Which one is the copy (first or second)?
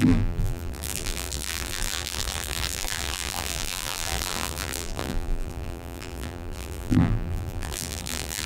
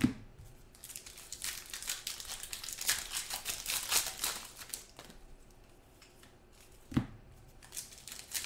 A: first